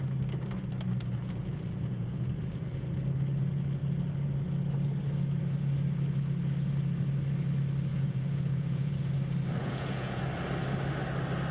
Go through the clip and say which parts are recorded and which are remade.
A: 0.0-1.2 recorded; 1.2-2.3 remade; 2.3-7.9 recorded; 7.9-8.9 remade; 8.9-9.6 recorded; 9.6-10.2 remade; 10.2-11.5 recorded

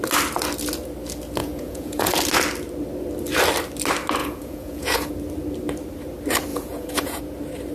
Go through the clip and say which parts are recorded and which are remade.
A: 0.0-1.4 recorded; 1.4-2.1 remade; 2.1-4.2 recorded; 4.2-5.1 remade; 5.1-6.5 recorded; 6.5-7.2 remade; 7.2-7.7 recorded